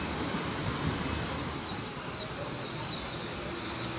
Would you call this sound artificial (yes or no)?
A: no